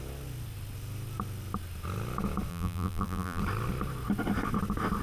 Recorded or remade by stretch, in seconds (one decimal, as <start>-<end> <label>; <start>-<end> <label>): 0.0-2.5 recorded; 2.5-3.4 remade; 3.4-5.0 recorded